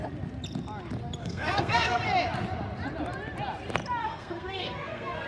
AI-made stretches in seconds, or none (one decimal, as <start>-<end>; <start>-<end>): 1.2-2.0; 4.0-5.3